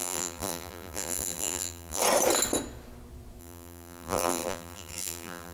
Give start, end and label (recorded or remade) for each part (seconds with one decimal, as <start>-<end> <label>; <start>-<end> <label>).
0.0-2.0 remade; 2.0-3.4 recorded; 3.4-5.5 remade